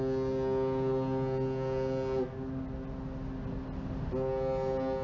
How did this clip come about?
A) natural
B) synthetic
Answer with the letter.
A